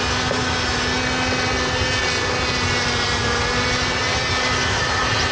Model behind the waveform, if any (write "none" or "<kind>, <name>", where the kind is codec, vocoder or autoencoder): none